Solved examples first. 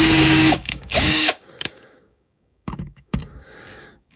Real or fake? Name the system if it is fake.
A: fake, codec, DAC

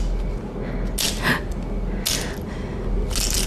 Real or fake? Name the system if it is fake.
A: real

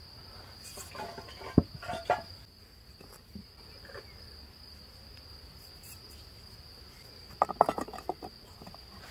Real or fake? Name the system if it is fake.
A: real